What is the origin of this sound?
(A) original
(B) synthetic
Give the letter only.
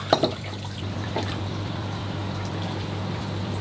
B